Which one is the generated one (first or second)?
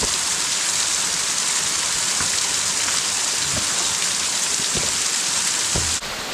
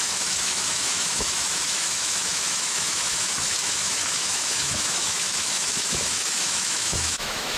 second